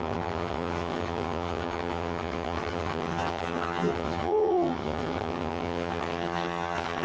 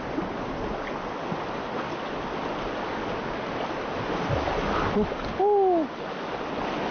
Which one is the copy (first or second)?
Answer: first